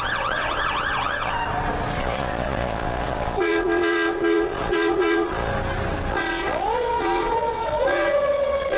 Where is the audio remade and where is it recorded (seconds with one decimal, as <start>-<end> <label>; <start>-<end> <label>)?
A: 0.0-1.4 remade; 1.4-2.0 recorded; 2.0-5.5 remade; 5.5-6.1 recorded; 6.1-8.8 remade